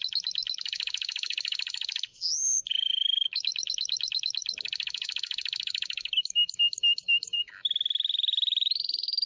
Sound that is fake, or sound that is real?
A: fake